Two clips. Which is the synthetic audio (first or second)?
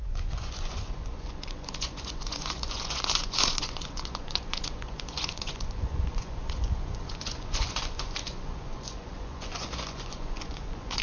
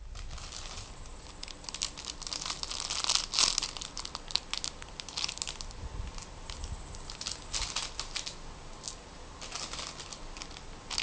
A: first